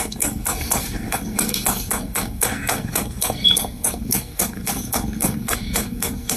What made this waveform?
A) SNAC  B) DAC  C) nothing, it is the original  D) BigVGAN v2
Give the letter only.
A